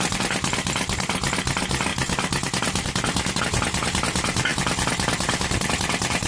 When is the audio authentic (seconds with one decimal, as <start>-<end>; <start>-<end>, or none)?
0.0-6.3